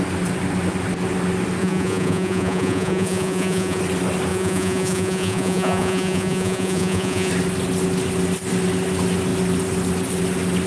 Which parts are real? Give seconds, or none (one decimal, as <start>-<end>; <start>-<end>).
0.0-1.6; 3.8-4.3; 7.3-10.7